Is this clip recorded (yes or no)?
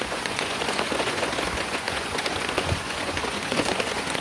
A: no